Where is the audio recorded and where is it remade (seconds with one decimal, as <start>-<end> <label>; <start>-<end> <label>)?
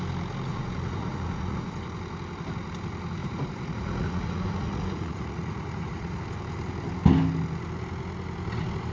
0.0-0.5 recorded; 0.5-1.7 remade; 1.7-3.2 recorded; 3.2-6.2 remade; 6.2-8.9 recorded